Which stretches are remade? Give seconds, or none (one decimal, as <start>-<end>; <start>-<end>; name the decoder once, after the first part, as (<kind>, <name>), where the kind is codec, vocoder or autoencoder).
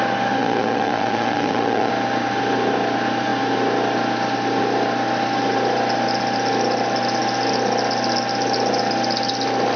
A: 0.4-1.9 (vocoder, Vocos)